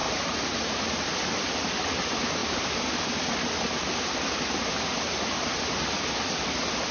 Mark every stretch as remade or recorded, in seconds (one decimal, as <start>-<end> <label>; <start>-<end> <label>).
0.0-1.0 remade; 1.0-6.9 recorded